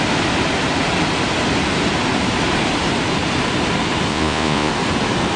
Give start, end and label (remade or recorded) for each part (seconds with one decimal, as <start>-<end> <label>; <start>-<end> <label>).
0.0-4.1 recorded; 4.1-4.7 remade; 4.7-5.4 recorded